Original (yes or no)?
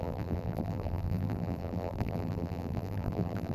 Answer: no